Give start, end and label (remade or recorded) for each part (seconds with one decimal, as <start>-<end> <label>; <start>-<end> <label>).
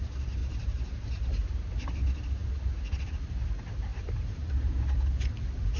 0.0-0.4 recorded; 0.4-1.1 remade; 1.1-3.9 recorded; 3.9-4.8 remade; 4.8-5.8 recorded